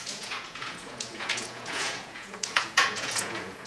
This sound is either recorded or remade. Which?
remade